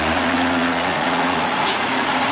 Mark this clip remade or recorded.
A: remade